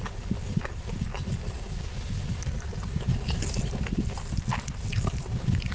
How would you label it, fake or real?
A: real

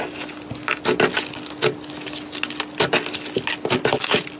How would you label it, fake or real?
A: real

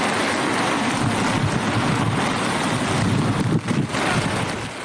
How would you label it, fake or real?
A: real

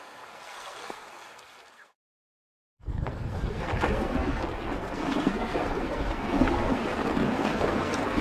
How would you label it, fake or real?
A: fake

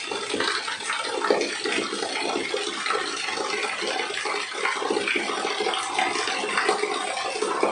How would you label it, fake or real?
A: real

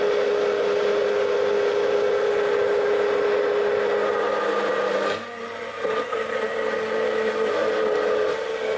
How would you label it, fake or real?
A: real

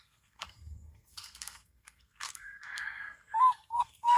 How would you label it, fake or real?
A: fake